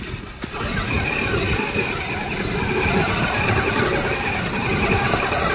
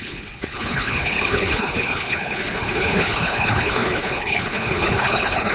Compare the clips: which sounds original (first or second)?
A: first